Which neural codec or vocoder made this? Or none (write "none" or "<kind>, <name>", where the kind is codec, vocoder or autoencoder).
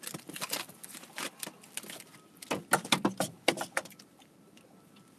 none